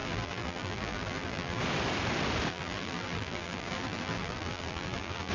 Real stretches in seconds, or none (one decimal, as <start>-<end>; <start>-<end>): 1.6-2.5